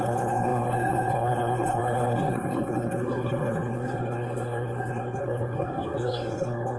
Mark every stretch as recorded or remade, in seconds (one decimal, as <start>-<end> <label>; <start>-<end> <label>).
0.0-6.8 remade